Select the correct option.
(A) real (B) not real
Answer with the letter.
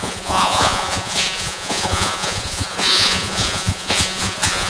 B